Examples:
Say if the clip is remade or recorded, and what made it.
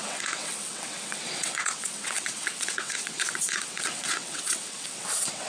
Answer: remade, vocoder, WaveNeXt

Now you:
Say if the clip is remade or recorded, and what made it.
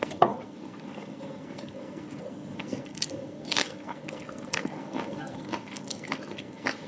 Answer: remade, codec, SNAC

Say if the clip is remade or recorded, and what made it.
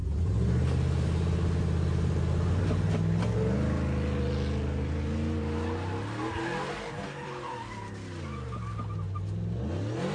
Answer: recorded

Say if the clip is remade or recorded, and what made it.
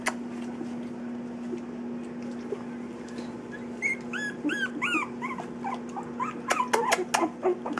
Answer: recorded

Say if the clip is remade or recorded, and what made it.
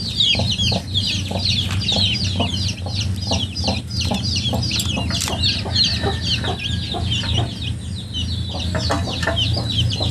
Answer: recorded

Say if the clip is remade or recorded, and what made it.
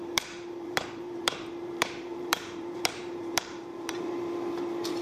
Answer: remade, vocoder, BigVGAN v2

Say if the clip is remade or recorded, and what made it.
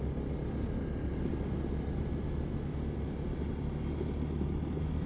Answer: recorded